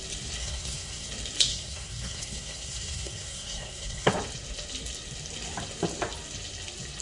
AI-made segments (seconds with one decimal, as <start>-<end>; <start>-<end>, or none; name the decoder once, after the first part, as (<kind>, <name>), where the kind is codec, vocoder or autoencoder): 0.4-1.1 (codec, SNAC); 1.5-4.1

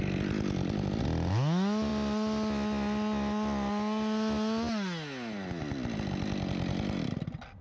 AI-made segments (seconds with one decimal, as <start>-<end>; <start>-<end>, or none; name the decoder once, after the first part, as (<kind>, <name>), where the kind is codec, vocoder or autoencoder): none

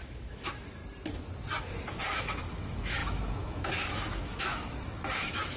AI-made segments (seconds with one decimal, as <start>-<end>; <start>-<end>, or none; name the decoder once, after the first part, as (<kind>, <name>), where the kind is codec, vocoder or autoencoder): 0.0-0.8 (autoencoder, DAC-VAE); 1.6-5.6